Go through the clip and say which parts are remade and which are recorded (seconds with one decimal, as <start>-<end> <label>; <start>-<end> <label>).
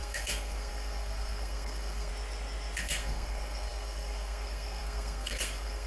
0.0-2.1 remade; 2.1-2.8 recorded; 2.8-5.9 remade